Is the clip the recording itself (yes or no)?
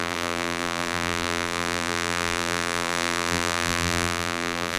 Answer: no